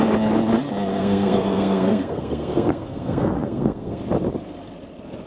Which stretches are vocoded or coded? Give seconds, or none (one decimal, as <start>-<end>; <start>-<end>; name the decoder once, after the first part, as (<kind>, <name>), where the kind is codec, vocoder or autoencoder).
0.9-4.0 (codec, SNAC)